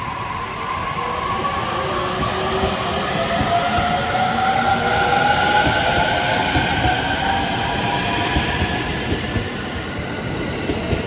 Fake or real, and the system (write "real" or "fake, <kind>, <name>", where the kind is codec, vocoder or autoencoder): real